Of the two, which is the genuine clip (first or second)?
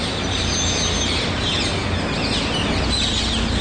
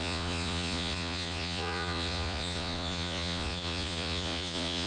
first